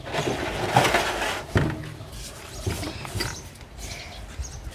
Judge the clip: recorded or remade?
recorded